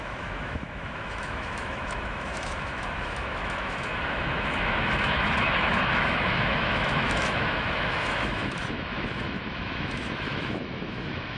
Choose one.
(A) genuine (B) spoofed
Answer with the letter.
B